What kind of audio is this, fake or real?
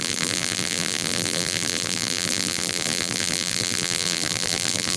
fake